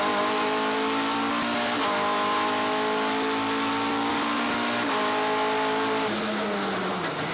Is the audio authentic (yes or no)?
yes